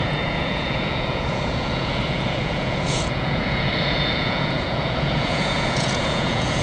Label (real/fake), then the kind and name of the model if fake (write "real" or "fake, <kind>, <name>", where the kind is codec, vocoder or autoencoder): fake, vocoder, Vocos